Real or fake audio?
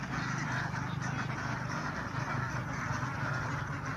real